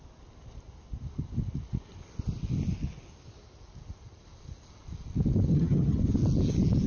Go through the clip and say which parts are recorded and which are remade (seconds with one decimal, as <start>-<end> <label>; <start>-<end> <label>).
0.0-5.5 recorded; 5.5-6.0 remade; 6.0-6.9 recorded